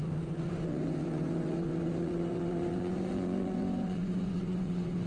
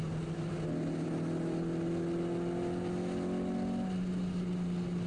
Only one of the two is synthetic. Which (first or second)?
first